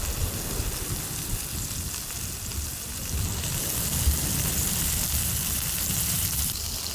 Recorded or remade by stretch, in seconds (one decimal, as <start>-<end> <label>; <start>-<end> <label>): 0.0-6.9 recorded